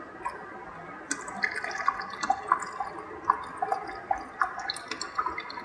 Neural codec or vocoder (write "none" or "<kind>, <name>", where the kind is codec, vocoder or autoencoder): none